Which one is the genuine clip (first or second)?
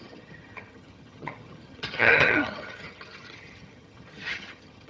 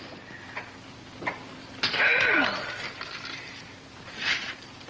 second